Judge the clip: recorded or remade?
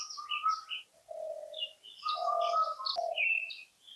recorded